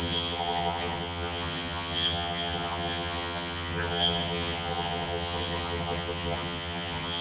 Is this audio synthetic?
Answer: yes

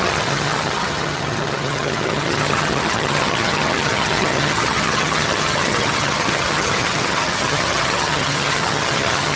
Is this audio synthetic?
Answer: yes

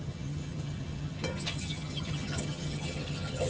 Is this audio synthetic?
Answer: yes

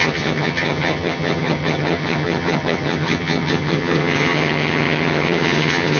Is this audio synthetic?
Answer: yes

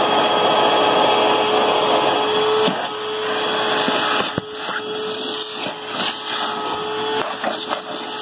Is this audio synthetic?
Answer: no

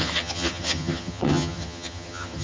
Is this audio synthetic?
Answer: yes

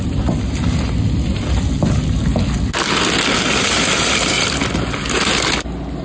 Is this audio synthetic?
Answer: no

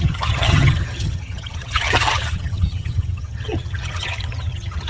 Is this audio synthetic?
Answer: yes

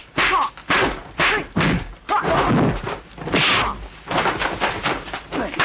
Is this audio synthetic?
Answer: no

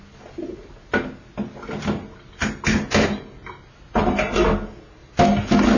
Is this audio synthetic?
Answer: no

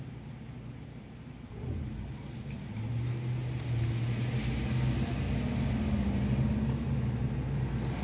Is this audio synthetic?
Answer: no